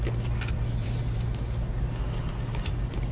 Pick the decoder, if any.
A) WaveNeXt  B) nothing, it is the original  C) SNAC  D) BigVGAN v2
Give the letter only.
B